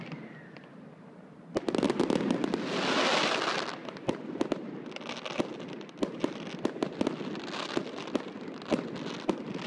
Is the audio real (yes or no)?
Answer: yes